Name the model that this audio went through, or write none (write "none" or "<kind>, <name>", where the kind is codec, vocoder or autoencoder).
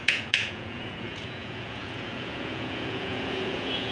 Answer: vocoder, Vocos